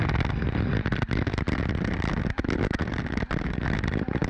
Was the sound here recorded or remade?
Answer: recorded